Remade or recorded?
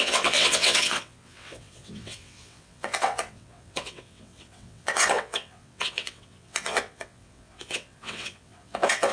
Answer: remade